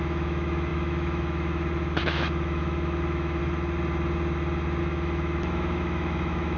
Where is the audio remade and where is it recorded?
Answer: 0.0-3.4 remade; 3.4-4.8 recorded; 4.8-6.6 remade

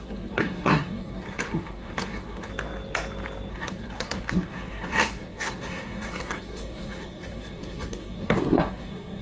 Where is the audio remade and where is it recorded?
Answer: 0.0-2.5 remade; 2.5-3.5 recorded; 3.5-9.2 remade

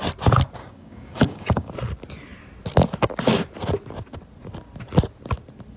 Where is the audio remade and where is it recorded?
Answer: 0.0-0.6 recorded; 0.6-1.7 remade; 1.7-5.8 recorded

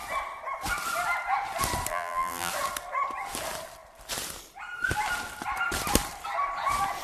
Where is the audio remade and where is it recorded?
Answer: 0.0-1.9 recorded; 1.9-2.5 remade; 2.5-7.0 recorded

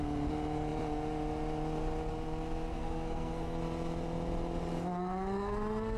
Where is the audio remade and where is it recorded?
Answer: 0.0-2.7 recorded; 2.7-3.6 remade; 3.6-4.9 recorded; 4.9-6.0 remade